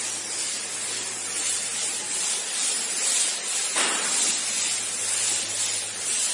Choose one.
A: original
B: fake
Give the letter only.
A